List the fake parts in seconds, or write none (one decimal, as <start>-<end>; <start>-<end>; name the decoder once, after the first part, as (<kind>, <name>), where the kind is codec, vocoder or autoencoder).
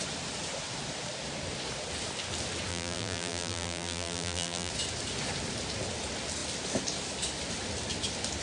2.7-4.7 (vocoder, BigVGAN v2)